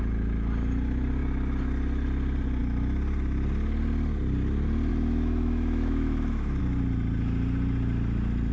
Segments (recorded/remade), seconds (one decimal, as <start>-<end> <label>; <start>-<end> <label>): 0.0-4.9 recorded; 4.9-6.6 remade; 6.6-8.5 recorded